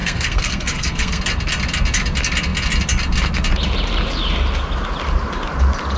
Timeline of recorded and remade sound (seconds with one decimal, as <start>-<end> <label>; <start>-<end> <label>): 0.0-1.2 remade; 1.2-6.0 recorded